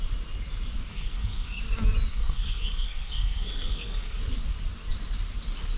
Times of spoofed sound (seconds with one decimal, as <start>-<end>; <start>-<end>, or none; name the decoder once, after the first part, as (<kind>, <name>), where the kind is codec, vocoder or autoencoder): 0.9-1.6 (codec, SNAC); 2.1-4.2

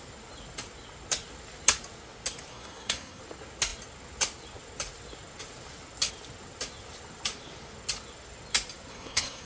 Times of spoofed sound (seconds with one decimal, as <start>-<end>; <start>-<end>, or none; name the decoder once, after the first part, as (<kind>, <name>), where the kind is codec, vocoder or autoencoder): 2.5-3.2 (codec, SNAC); 8.9-9.5

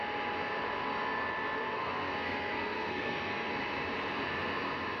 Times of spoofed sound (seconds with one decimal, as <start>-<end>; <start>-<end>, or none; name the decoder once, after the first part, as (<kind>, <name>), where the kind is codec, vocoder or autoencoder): 1.6-3.5 (codec, SNAC)

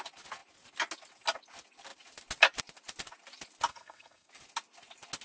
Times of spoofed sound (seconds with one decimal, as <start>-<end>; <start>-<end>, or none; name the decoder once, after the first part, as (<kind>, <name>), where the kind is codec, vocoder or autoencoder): 3.7-4.3 (codec, SNAC)

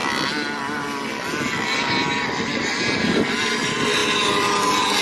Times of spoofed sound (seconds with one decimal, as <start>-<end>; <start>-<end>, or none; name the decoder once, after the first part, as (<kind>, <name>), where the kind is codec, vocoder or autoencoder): none

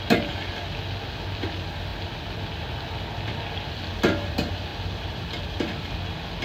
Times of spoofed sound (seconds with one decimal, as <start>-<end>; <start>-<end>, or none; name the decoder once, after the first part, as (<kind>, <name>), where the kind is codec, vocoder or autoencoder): none

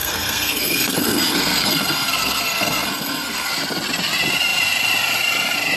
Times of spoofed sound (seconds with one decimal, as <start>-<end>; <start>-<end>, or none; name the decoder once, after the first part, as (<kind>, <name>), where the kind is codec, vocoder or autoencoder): 0.0-3.5 (codec, SNAC)

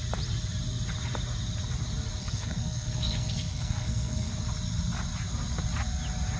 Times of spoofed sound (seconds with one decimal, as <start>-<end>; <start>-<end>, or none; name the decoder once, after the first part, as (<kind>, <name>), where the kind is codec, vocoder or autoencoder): 2.2-4.3 (codec, SNAC)